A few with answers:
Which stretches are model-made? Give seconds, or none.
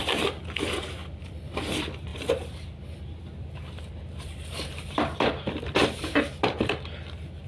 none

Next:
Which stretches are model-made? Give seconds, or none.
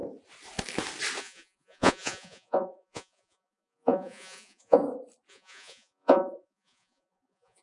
1.2-4.8 (vocoder, Vocos); 5.3-7.6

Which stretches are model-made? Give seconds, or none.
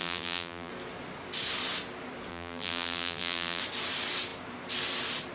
0.0-0.7 (vocoder, BigVGAN v2); 2.3-3.6